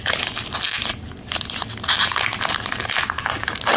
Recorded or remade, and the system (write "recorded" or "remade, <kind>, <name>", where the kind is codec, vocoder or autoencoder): recorded